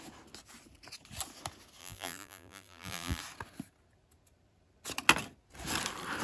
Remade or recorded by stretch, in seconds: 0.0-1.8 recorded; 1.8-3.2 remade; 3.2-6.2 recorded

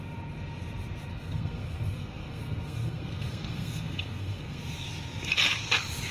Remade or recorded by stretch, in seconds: 0.0-1.1 recorded; 1.1-4.6 remade; 4.6-6.1 recorded

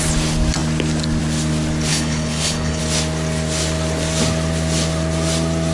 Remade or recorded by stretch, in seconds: 0.0-1.9 recorded; 1.9-2.8 remade; 2.8-5.7 recorded

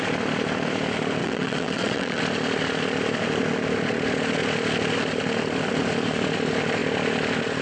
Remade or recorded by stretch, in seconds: 0.0-1.2 recorded; 1.2-2.2 remade; 2.2-7.6 recorded

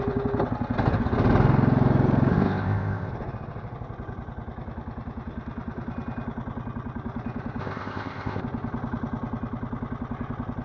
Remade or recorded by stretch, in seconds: 0.0-2.3 recorded; 2.3-3.1 remade; 3.1-7.6 recorded; 7.6-8.4 remade; 8.4-10.6 recorded

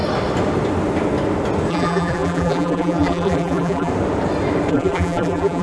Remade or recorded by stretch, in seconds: 0.0-1.7 recorded; 1.7-3.9 remade; 3.9-4.7 recorded; 4.7-5.6 remade

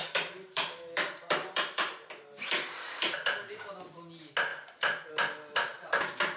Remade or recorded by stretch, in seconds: 0.0-3.7 remade; 3.7-4.5 recorded; 4.5-5.1 remade; 5.1-5.7 recorded; 5.7-6.4 remade